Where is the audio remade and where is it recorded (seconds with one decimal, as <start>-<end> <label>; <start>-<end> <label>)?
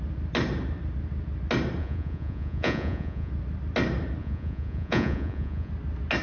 0.0-1.8 recorded; 1.8-3.3 remade; 3.3-4.2 recorded; 4.2-5.7 remade; 5.7-6.2 recorded